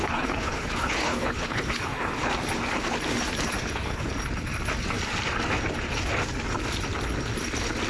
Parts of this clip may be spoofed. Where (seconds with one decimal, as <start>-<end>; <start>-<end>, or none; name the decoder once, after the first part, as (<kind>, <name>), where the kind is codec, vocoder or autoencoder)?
0.0-2.3 (codec, HILCodec); 3.6-4.1